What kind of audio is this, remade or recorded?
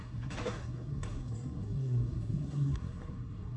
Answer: remade